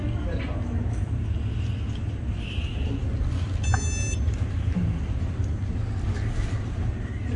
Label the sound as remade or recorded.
recorded